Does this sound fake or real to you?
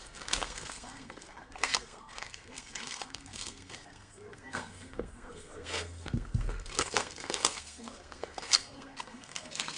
fake